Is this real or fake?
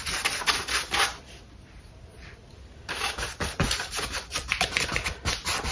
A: real